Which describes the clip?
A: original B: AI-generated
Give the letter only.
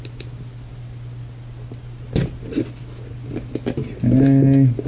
A